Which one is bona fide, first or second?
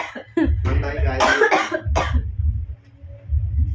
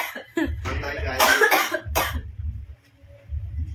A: first